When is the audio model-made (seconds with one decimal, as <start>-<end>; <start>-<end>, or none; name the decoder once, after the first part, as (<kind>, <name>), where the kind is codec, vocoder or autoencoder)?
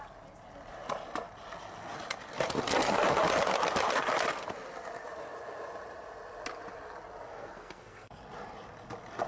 7.3-8.2 (codec, SNAC)